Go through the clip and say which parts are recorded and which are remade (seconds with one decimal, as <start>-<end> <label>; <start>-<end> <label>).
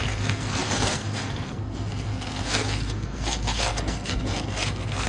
0.0-5.1 remade